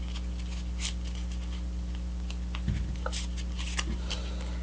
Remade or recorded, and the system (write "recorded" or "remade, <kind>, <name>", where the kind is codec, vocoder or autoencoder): recorded